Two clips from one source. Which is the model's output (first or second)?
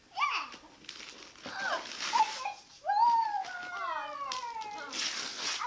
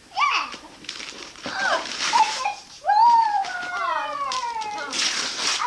second